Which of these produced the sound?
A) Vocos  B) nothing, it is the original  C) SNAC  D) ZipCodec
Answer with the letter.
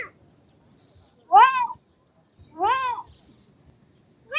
B